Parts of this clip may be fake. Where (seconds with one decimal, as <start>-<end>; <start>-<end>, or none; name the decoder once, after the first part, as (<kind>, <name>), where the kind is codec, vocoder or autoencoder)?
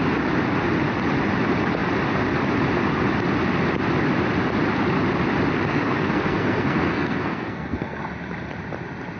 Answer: 5.7-8.0 (codec, SNAC)